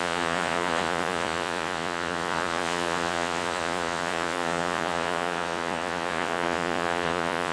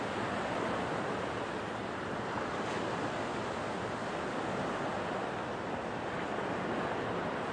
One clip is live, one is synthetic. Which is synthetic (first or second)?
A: first